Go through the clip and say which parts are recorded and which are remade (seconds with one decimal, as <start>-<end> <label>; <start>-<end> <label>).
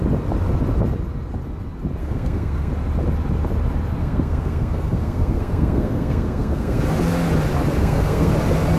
0.0-2.0 recorded; 2.0-2.7 remade; 2.7-4.0 recorded; 4.0-6.8 remade; 6.8-7.8 recorded; 7.8-8.3 remade; 8.3-8.8 recorded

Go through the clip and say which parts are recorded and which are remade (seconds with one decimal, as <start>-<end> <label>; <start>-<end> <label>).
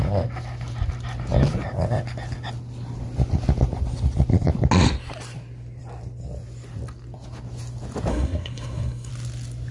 0.0-8.1 recorded; 8.1-9.1 remade; 9.1-9.7 recorded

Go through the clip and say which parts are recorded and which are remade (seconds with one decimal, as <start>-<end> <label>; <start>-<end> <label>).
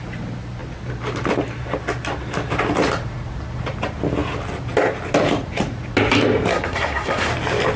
0.0-6.5 recorded; 6.5-7.3 remade; 7.3-7.8 recorded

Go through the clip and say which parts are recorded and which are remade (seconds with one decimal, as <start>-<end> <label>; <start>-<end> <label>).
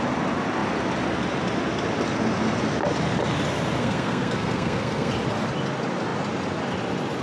0.0-3.8 recorded; 3.8-5.1 remade; 5.1-7.2 recorded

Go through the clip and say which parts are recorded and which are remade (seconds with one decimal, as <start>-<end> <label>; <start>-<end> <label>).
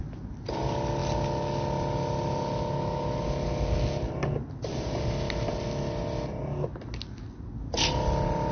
0.0-8.5 recorded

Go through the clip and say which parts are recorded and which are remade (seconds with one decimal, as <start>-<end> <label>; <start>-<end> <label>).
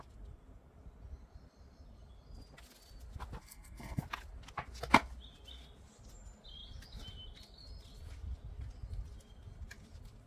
0.0-3.4 recorded; 3.4-4.0 remade; 4.0-10.3 recorded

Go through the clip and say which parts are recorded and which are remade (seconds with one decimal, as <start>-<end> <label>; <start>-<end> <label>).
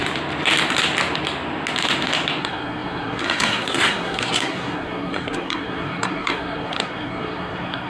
0.0-2.4 recorded; 2.4-7.9 remade